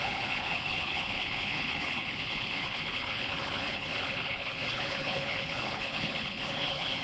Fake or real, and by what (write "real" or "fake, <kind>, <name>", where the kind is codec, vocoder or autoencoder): fake, codec, HILCodec